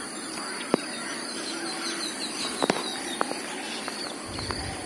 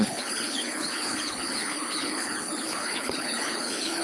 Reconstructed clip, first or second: second